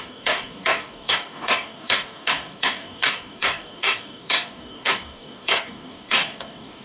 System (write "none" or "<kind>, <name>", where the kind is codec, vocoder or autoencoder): codec, DAC